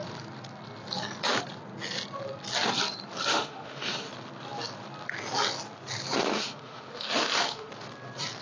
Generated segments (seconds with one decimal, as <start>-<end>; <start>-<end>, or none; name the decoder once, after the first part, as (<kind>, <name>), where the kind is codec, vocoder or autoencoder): 3.3-4.1 (autoencoder, DAC-VAE); 6.3-7.7